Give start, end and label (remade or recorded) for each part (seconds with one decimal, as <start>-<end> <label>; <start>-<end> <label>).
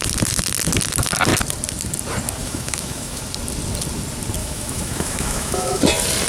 0.0-2.4 recorded; 2.4-3.2 remade; 3.2-4.4 recorded; 4.4-5.8 remade; 5.8-6.3 recorded